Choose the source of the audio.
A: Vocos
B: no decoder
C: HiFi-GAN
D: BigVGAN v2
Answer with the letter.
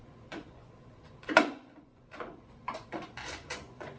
A